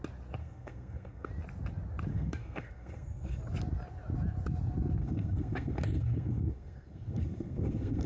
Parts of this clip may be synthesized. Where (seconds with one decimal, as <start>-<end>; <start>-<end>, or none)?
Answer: 0.4-1.3; 2.1-3.4; 5.0-8.1